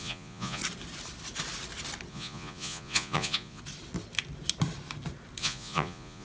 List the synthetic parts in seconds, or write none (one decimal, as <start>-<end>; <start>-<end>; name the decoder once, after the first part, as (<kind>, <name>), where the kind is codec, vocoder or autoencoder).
0.0-0.6 (vocoder, Vocos); 2.1-3.6; 5.4-6.2